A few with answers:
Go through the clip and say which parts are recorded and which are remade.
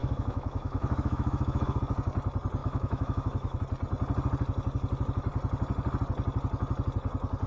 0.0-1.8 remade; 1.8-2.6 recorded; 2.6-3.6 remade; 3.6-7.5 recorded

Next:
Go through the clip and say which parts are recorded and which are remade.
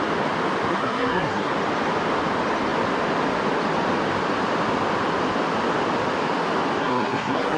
0.0-0.7 recorded; 0.7-1.5 remade; 1.5-6.8 recorded; 6.8-7.6 remade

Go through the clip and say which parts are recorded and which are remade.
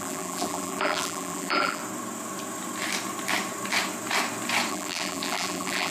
0.0-1.8 remade; 1.8-4.7 recorded; 4.7-5.9 remade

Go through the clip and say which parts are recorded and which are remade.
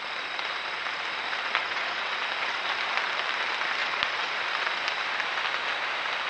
0.0-1.6 recorded; 1.6-2.2 remade; 2.2-3.8 recorded; 3.8-4.4 remade; 4.4-6.3 recorded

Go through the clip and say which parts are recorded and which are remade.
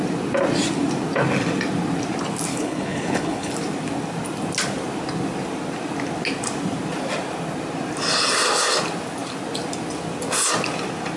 0.0-2.5 recorded; 2.5-3.5 remade; 3.5-11.2 recorded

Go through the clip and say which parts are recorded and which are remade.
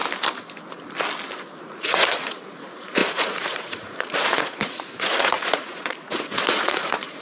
0.0-1.6 recorded; 1.6-7.2 remade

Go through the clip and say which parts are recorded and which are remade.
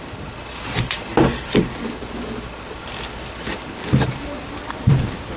0.0-3.8 recorded; 3.8-5.4 remade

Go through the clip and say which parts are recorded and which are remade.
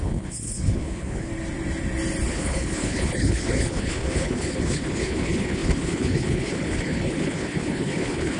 0.0-1.3 remade; 1.3-2.3 recorded; 2.3-8.4 remade